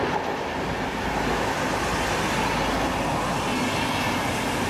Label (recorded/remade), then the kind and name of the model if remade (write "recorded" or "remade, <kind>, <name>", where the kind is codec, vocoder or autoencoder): recorded